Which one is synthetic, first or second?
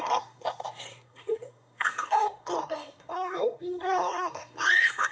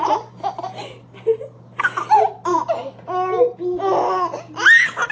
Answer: first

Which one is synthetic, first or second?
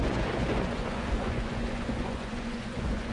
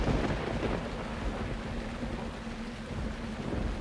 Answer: first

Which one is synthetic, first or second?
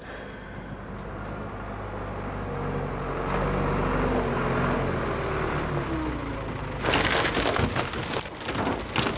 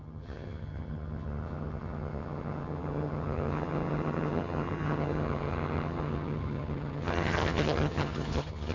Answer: second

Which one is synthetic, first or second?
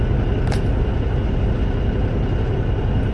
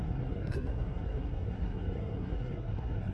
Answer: second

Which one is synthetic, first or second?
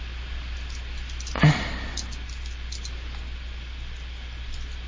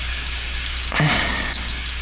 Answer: second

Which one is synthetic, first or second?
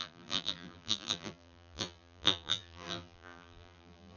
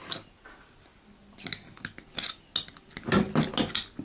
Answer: first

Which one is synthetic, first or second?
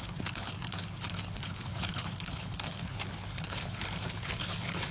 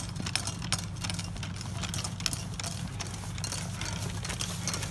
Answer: first